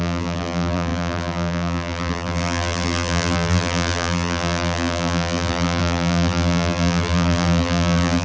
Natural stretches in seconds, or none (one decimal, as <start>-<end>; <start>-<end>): none